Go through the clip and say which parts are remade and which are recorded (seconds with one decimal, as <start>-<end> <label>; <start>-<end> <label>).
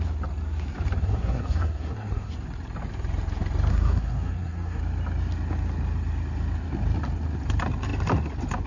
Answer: 0.0-1.0 recorded; 1.0-2.3 remade; 2.3-3.7 recorded; 3.7-4.8 remade; 4.8-8.7 recorded